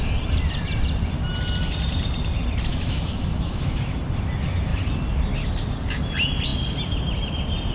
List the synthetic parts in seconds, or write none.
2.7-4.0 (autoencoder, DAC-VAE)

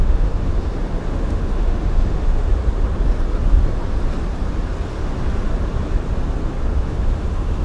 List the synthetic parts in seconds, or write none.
0.0-0.5 (autoencoder, DAC-VAE); 1.1-2.6; 6.7-7.6

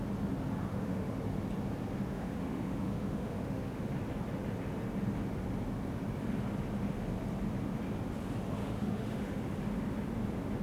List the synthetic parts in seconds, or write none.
0.7-1.2 (autoencoder, DAC-VAE); 2.1-3.8; 8.6-9.4